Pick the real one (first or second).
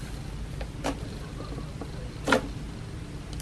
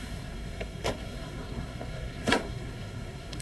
first